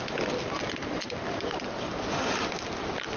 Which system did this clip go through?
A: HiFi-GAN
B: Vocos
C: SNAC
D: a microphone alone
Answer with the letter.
D